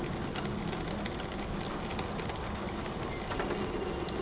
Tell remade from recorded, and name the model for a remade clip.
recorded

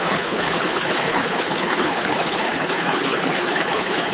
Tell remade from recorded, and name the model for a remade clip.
remade, codec, HILCodec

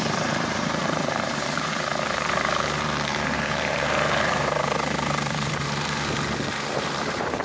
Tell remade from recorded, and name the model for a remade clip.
remade, vocoder, BigVGAN v2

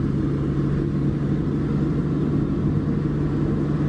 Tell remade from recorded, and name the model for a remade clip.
recorded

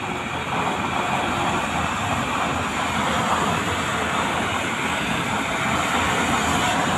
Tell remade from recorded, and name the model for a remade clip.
recorded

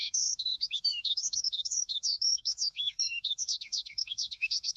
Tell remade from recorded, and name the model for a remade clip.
remade, autoencoder, DAC-VAE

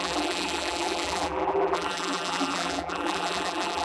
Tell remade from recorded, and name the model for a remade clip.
remade, vocoder, BigVGAN v2